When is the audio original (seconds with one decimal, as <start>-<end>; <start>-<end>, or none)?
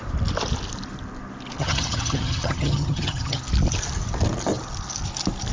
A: 0.0-1.6; 3.4-5.5